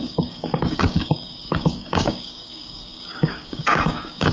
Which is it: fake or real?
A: fake